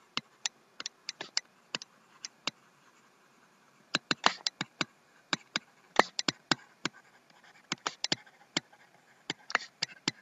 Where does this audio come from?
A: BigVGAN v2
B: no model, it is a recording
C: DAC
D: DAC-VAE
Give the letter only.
A